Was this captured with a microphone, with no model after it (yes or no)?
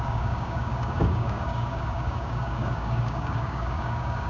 no